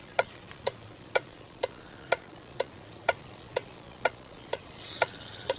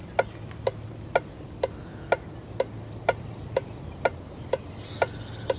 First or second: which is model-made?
first